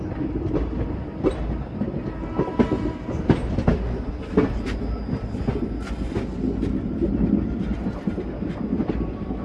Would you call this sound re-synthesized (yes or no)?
no